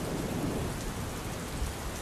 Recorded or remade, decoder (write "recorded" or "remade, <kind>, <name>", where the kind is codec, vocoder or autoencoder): recorded